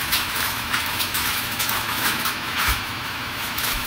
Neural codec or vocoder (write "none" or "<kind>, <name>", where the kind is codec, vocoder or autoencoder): autoencoder, DAC-VAE